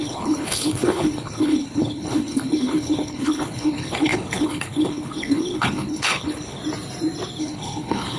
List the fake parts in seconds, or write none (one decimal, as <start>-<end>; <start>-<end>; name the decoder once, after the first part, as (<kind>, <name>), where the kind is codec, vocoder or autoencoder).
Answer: 0.0-6.6 (codec, HILCodec); 7.4-8.2